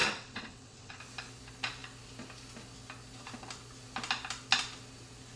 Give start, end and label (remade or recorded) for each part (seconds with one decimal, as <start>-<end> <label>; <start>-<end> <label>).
0.0-1.0 remade; 1.0-5.4 recorded